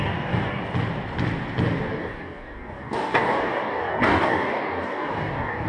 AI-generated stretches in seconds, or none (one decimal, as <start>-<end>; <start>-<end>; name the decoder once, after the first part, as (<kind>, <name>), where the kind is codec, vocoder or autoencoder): 0.0-0.6 (codec, DAC); 1.9-5.7